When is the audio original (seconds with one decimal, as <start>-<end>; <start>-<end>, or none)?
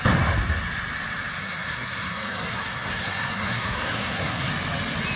0.0-1.4; 4.5-5.2